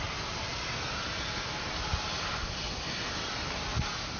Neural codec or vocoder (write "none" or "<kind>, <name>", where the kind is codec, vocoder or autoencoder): none